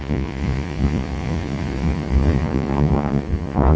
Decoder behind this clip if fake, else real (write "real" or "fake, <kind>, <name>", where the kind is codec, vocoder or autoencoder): fake, vocoder, Vocos